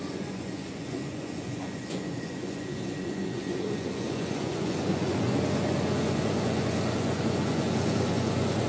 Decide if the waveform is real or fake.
fake